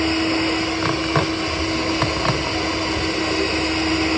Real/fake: real